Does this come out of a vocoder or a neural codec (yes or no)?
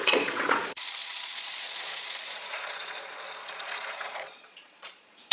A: yes